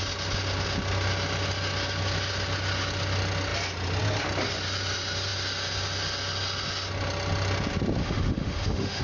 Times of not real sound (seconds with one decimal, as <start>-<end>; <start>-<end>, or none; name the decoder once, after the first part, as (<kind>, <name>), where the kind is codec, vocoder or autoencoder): 8.0-9.0 (autoencoder, DAC-VAE)